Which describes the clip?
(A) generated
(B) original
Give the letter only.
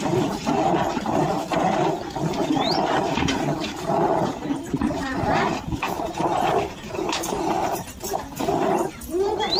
A